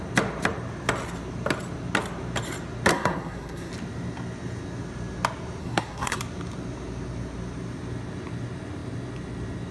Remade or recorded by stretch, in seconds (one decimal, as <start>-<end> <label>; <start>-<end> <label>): 0.0-2.9 recorded; 2.9-3.7 remade; 3.7-5.6 recorded; 5.6-6.2 remade; 6.2-9.7 recorded